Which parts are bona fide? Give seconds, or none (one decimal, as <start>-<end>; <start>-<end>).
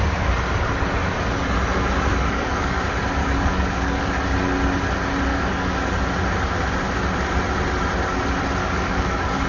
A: 0.0-2.1; 2.8-3.2; 4.1-5.3; 6.0-8.6